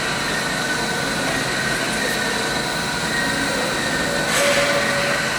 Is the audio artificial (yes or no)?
no